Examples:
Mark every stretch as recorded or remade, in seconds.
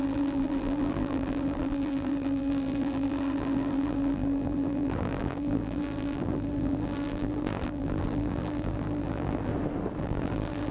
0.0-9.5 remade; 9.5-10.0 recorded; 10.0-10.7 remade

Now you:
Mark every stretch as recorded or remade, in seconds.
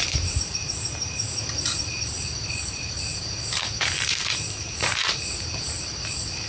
0.0-6.5 remade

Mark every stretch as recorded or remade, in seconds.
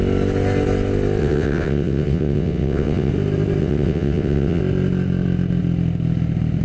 0.0-1.2 recorded; 1.2-3.1 remade; 3.1-3.6 recorded; 3.6-4.6 remade; 4.6-6.6 recorded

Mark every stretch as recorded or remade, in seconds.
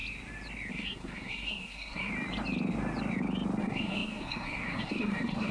0.0-0.7 recorded; 0.7-2.1 remade; 2.1-3.6 recorded; 3.6-5.5 remade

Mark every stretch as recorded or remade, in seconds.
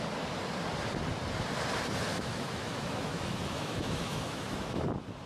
0.0-2.1 recorded; 2.1-4.8 remade; 4.8-5.3 recorded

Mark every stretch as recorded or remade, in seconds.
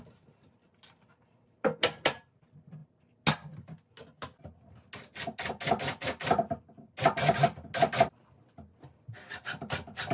0.0-10.1 recorded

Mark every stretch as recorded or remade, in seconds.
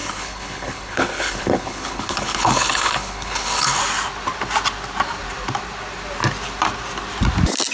0.0-3.8 remade; 3.8-7.7 recorded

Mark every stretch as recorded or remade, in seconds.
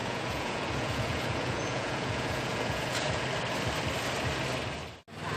0.0-3.2 remade; 3.2-5.4 recorded